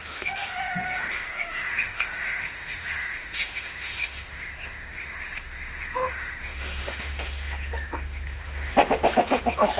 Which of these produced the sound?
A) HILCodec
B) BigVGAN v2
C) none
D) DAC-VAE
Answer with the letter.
D